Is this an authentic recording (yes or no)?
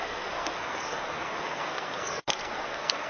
no